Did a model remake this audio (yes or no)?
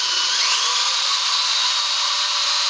no